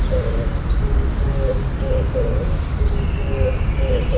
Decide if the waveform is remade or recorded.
recorded